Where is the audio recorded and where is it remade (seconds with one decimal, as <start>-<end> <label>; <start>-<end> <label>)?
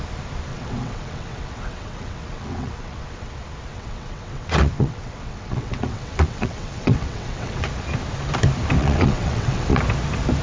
0.0-0.5 recorded; 0.5-3.3 remade; 3.3-3.7 recorded; 3.7-7.7 remade; 7.7-8.8 recorded; 8.8-9.8 remade; 9.8-10.4 recorded